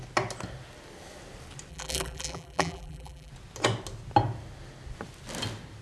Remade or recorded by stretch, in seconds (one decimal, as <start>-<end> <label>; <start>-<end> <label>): 0.0-1.7 recorded; 1.7-3.3 remade; 3.3-5.8 recorded